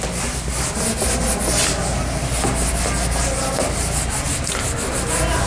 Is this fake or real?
real